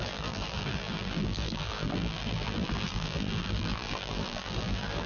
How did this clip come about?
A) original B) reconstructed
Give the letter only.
B